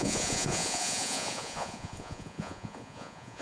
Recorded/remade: remade